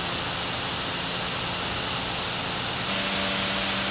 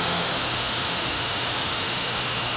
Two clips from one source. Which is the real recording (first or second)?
first